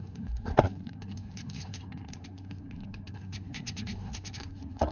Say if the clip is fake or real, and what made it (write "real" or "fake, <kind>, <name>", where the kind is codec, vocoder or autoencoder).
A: fake, codec, SNAC